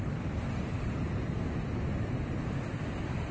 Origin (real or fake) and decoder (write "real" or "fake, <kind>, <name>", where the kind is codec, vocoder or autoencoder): real